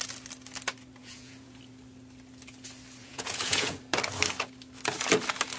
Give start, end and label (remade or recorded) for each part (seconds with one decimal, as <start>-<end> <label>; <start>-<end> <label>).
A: 0.0-1.0 recorded; 1.0-1.6 remade; 1.6-3.0 recorded; 3.0-3.8 remade; 3.8-5.6 recorded